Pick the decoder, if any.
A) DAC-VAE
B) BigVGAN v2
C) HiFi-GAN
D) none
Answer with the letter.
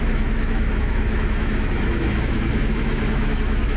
A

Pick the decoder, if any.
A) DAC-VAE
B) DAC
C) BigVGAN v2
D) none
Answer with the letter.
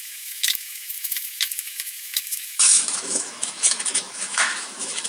A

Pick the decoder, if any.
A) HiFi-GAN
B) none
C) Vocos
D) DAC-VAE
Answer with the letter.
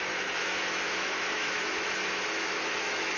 D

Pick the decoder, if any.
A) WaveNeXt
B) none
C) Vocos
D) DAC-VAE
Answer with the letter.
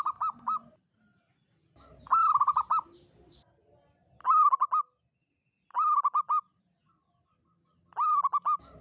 B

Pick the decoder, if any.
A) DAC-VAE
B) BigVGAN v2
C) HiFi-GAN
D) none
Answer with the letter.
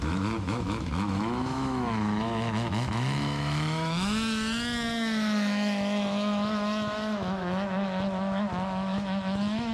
A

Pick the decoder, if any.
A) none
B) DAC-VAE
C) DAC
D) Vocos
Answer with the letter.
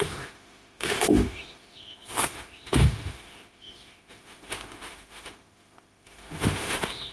B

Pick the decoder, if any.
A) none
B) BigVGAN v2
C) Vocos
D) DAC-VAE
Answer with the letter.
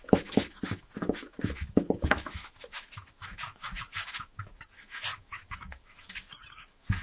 D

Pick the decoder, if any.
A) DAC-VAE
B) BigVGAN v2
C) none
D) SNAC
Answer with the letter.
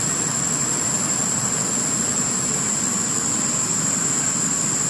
C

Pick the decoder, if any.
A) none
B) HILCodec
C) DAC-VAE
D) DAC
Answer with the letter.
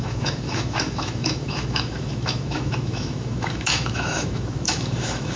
C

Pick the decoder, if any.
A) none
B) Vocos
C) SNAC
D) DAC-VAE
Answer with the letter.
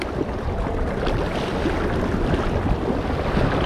A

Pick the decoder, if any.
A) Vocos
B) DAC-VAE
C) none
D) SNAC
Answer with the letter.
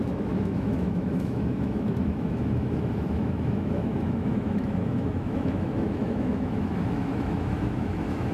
B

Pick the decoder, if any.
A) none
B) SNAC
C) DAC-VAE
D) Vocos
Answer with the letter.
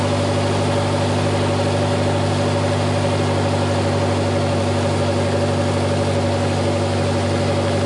A